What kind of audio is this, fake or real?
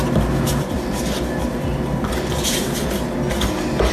real